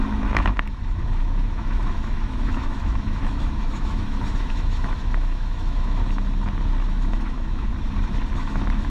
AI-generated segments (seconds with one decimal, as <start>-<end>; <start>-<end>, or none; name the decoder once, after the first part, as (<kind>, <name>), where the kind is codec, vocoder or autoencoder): 0.0-6.0 (autoencoder, DAC-VAE); 6.9-7.7; 8.4-8.9